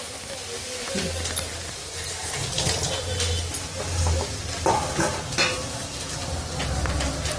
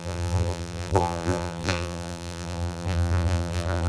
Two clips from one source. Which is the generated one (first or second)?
second